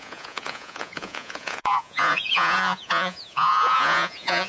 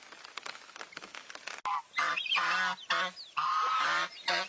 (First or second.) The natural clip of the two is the second